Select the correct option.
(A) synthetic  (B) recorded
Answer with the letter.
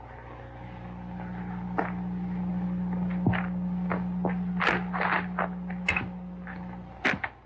B